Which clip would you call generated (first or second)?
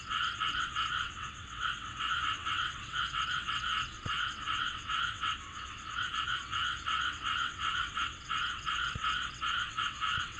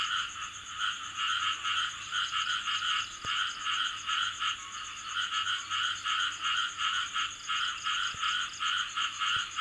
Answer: first